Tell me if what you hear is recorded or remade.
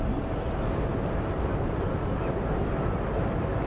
recorded